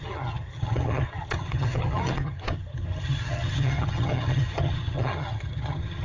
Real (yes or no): no